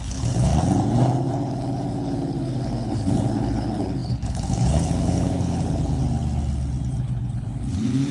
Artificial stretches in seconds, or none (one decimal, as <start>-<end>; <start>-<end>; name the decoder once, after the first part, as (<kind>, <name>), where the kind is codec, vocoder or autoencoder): 0.0-0.5 (codec, HILCodec); 1.3-6.0; 7.0-8.1